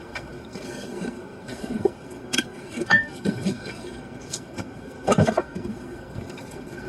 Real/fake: fake